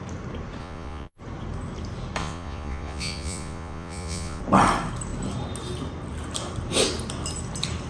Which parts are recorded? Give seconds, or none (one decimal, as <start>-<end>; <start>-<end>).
0.0-0.6; 1.2-2.2; 4.4-7.9